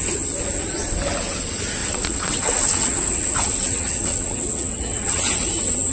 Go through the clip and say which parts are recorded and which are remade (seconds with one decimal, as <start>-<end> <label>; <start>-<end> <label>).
0.0-1.8 recorded; 1.8-5.2 remade; 5.2-5.9 recorded